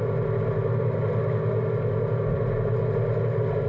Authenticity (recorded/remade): recorded